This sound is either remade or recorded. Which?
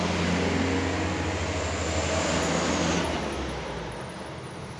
recorded